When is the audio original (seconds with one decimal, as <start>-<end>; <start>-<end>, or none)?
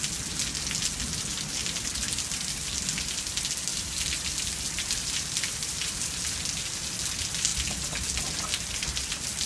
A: 0.0-1.6; 2.8-3.7; 6.4-9.5